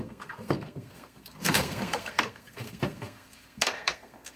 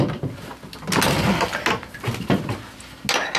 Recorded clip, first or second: second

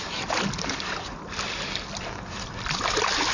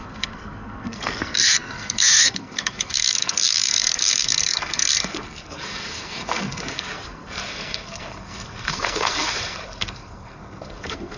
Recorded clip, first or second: first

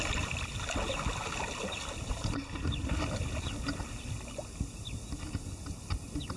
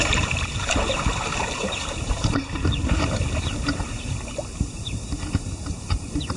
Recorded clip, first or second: first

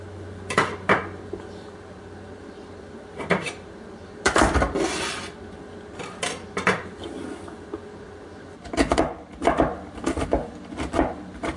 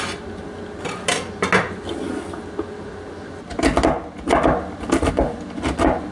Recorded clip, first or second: second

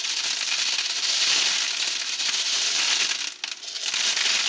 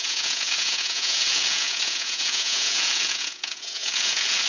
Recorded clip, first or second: first